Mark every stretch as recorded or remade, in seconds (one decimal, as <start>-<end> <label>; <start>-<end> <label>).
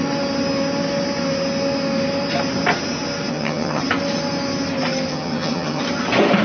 0.0-3.3 recorded; 3.3-3.8 remade; 3.8-5.1 recorded; 5.1-5.8 remade; 5.8-6.4 recorded